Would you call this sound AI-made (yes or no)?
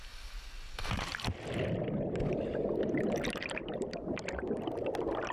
no